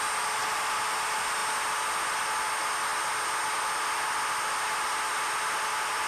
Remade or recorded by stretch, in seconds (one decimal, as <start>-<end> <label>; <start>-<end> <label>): 0.0-6.1 recorded